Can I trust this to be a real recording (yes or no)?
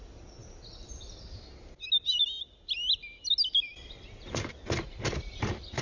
yes